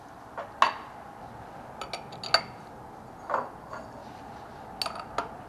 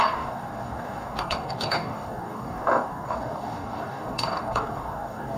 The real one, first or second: first